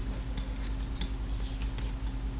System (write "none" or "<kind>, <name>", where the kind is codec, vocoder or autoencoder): none